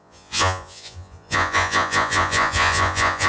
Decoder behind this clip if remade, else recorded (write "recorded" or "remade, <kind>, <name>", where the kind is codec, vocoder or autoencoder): remade, vocoder, Vocos